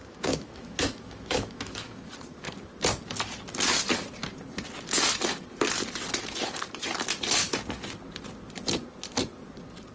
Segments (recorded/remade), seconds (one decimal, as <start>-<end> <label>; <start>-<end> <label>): 0.0-1.9 remade; 1.9-9.9 recorded